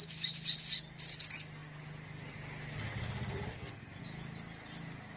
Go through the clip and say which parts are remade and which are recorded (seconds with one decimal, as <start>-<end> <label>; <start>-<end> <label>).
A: 0.0-3.5 recorded; 3.5-4.0 remade; 4.0-5.2 recorded